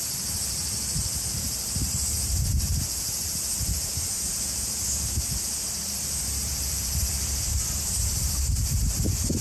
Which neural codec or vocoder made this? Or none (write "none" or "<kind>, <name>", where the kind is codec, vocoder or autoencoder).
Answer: vocoder, BigVGAN v2